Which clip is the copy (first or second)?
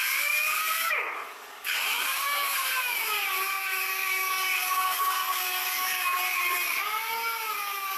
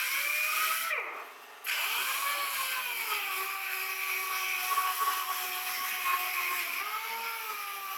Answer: first